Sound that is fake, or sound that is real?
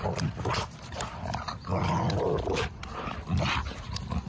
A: real